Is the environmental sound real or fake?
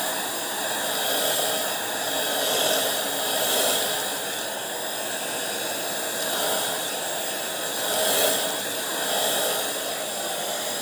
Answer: real